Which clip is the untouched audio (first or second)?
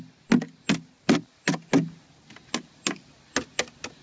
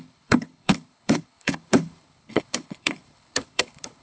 first